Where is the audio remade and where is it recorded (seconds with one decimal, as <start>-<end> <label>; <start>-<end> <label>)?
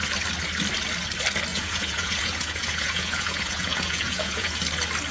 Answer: 0.0-1.5 recorded; 1.5-4.6 remade; 4.6-5.1 recorded